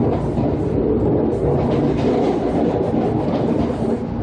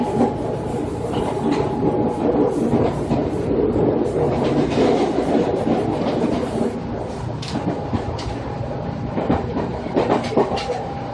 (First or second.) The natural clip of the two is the first